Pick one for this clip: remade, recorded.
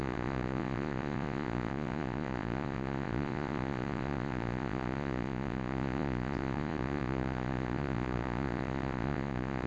remade